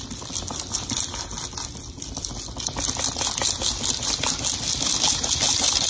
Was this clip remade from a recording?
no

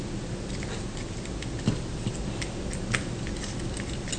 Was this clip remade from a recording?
no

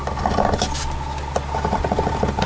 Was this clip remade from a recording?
no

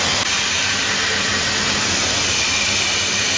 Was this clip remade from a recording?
no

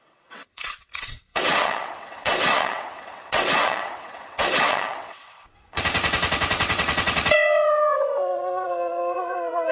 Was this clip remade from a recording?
yes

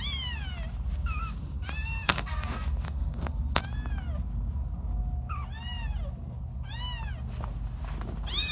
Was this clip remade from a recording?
no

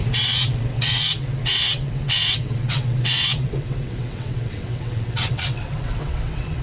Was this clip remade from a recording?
yes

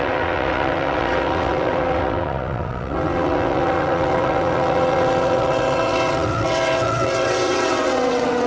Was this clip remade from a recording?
yes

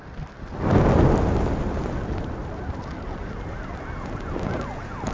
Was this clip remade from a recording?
no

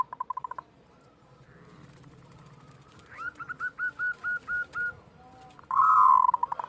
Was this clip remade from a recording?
no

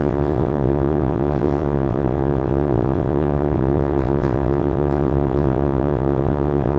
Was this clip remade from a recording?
yes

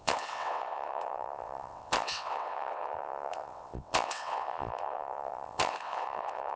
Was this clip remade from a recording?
yes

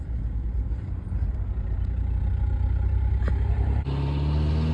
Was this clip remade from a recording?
no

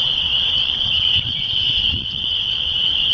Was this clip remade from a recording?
yes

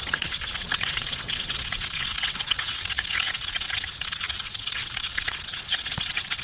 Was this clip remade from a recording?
yes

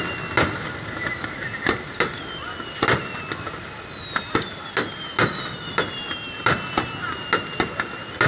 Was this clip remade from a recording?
no